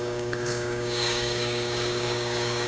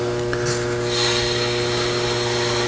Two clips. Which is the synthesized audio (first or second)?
first